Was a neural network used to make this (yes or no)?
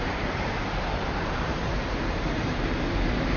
yes